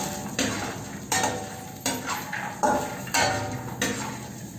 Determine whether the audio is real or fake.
real